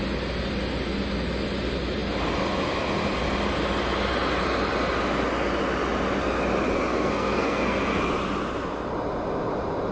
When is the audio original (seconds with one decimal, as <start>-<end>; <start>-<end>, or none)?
0.0-6.9; 8.0-9.9